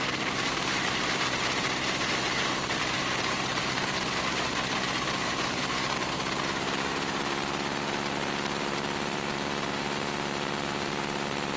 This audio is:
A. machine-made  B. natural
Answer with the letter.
A